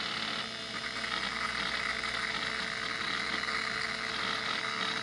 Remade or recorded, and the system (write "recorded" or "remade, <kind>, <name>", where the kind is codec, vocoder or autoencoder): recorded